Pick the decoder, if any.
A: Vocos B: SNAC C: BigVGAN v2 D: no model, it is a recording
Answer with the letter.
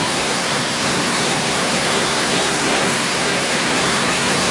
B